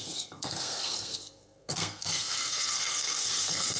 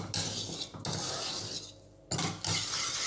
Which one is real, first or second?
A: second